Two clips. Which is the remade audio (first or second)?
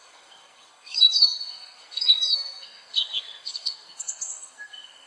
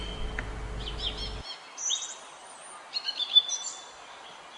first